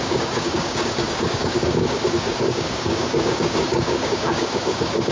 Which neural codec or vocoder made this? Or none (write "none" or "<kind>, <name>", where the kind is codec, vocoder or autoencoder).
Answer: codec, DAC